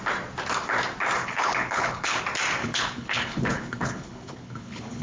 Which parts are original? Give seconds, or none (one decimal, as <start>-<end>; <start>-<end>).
0.0-1.2; 2.2-2.6